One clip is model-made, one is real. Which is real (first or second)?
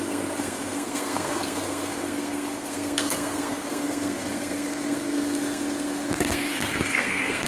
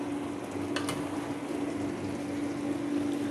second